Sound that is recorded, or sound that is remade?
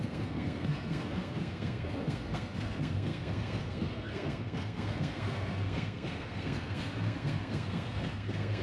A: remade